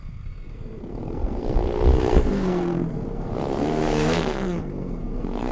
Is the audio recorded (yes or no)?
no